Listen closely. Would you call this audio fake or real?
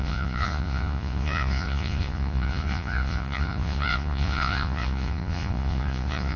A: fake